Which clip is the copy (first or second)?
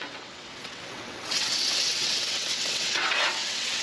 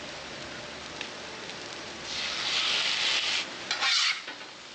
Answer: first